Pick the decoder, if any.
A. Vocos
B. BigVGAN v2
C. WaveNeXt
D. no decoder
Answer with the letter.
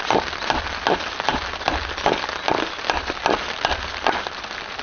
D